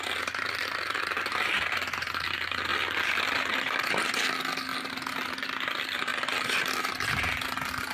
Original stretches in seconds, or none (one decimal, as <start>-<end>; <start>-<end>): 2.7-3.7; 6.1-7.2